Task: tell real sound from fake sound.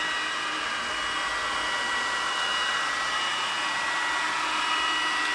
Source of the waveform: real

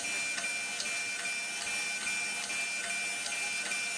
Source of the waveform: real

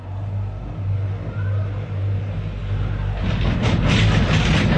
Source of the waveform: real